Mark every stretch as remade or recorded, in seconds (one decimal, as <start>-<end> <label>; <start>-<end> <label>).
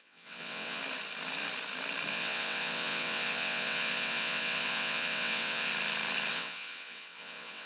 0.0-0.8 remade; 0.8-2.1 recorded; 2.1-5.7 remade; 5.7-6.3 recorded; 6.3-7.7 remade